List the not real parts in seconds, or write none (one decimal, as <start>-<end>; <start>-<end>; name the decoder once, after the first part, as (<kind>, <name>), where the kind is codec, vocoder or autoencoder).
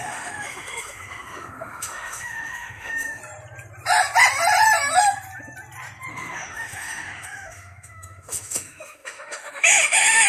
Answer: 0.0-3.2 (autoencoder, DAC-VAE); 6.1-10.3